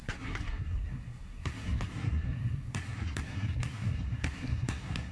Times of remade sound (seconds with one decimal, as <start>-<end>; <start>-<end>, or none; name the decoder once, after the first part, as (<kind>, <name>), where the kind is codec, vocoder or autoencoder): 0.0-5.1 (codec, SNAC)